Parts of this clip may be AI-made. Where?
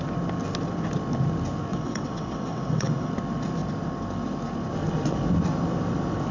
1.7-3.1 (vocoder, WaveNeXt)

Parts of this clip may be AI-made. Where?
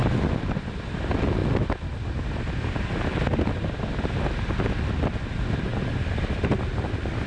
none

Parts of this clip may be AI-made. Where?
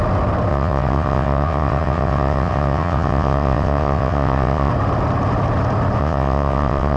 0.5-4.7 (vocoder, WaveNeXt); 6.0-7.0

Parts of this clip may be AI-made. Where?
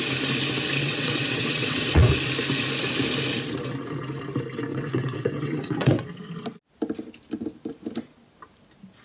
0.8-2.1 (vocoder, WaveNeXt); 4.7-6.0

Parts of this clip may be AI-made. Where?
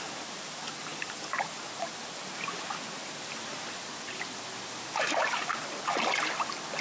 none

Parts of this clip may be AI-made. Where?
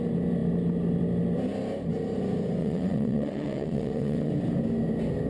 2.6-4.3 (vocoder, WaveNeXt)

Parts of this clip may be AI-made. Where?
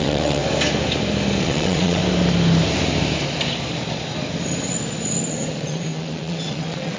0.0-0.4 (vocoder, WaveNeXt); 1.4-2.0; 5.3-7.0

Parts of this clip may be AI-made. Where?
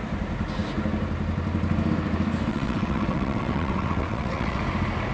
2.5-4.6 (vocoder, WaveNeXt)